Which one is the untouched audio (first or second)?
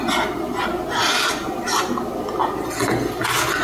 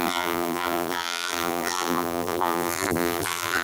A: first